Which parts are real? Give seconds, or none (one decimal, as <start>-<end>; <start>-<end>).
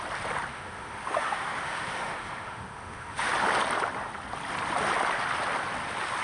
0.0-0.5; 3.3-6.2